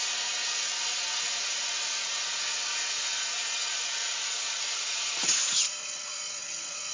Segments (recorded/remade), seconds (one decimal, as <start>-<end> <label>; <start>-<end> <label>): 0.0-6.9 remade